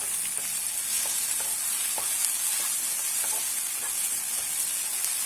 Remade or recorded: recorded